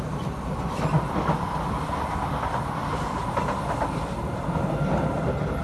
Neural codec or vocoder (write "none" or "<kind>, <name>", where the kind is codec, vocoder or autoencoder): none